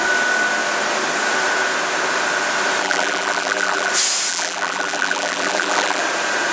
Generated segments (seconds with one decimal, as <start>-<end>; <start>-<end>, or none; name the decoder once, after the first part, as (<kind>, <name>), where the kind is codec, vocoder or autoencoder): 2.8-3.9 (vocoder, BigVGAN v2); 4.3-6.0